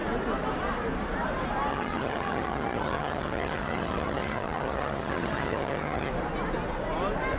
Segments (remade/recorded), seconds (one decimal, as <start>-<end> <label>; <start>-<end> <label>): 0.0-1.7 recorded; 1.7-6.1 remade; 6.1-7.4 recorded